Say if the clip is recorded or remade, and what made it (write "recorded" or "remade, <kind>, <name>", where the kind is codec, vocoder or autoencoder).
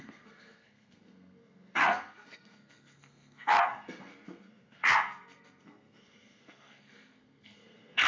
remade, codec, SNAC